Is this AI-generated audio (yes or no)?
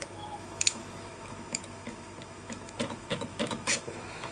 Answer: yes